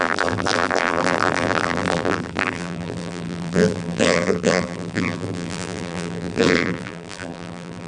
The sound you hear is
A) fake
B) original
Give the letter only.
A